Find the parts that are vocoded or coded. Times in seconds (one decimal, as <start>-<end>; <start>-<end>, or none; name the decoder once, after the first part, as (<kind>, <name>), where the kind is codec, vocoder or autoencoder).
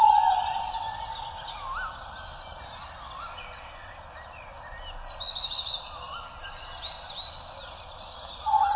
none